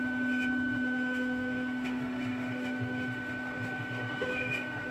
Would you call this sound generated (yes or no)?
yes